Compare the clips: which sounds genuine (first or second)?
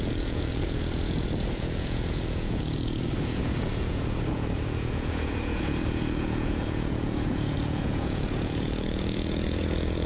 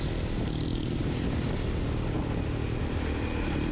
second